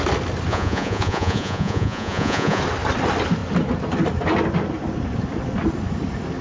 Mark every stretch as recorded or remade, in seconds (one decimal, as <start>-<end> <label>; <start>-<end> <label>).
0.0-0.5 recorded; 0.5-2.6 remade; 2.6-6.4 recorded